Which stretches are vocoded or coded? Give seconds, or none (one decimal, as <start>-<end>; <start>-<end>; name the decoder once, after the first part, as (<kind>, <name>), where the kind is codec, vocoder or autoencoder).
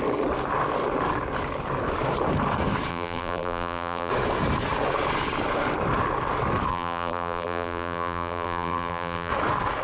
2.9-4.1 (vocoder, BigVGAN v2); 6.7-9.3